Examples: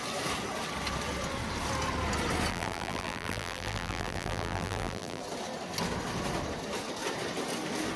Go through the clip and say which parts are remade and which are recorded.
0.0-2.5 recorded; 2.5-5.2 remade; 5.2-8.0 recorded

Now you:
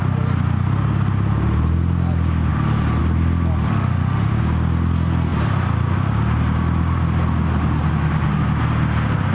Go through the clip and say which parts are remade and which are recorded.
0.0-3.7 recorded; 3.7-4.3 remade; 4.3-9.3 recorded

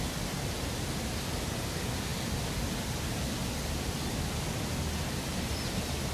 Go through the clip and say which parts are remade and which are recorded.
0.0-6.1 recorded